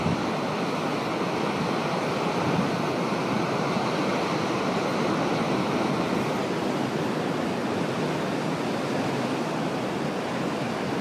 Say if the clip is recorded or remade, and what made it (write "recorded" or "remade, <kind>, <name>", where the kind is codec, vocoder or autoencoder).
recorded